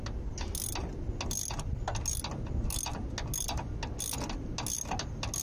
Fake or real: real